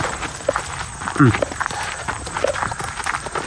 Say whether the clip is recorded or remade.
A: recorded